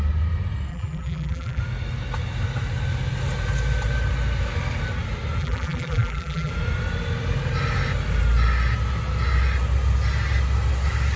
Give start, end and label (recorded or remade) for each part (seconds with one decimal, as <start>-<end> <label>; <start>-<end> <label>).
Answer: 0.0-0.7 recorded; 0.7-1.6 remade; 1.6-5.4 recorded; 5.4-6.5 remade; 6.5-11.2 recorded